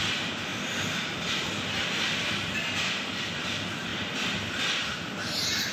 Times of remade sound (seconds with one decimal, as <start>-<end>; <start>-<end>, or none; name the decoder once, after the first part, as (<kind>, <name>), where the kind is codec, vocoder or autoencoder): none